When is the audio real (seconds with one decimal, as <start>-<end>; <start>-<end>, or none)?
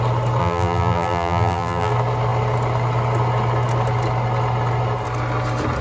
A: 0.0-0.4; 1.9-5.8